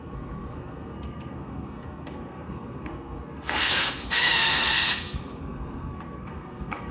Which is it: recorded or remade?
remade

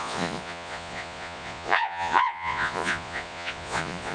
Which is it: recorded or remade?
remade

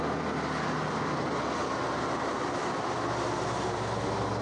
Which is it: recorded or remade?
recorded